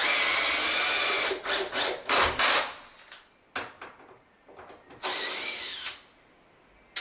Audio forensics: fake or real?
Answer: real